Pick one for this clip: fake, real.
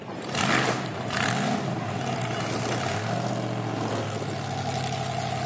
real